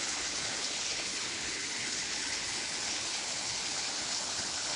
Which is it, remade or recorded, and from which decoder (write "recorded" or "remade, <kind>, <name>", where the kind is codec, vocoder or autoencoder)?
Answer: remade, codec, HILCodec